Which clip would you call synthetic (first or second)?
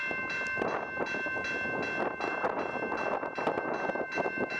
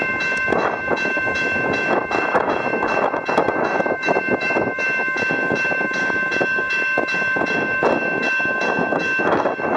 second